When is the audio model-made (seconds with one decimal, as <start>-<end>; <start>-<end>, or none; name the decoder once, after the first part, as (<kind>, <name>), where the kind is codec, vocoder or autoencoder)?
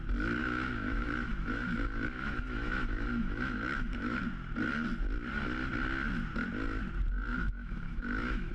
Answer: 0.4-4.2 (autoencoder, DAC-VAE); 7.3-8.5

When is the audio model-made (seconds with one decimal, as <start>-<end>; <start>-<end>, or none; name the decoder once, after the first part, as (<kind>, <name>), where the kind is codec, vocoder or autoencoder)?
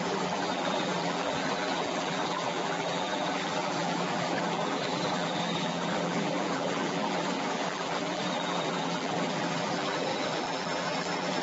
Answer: 0.0-11.4 (vocoder, BigVGAN v2)